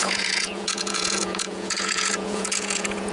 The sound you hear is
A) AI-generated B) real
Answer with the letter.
A